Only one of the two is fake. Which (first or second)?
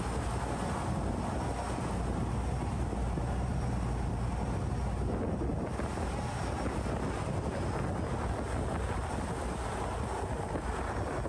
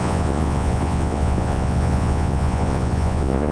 second